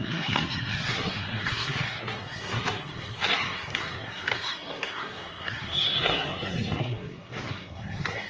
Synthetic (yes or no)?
yes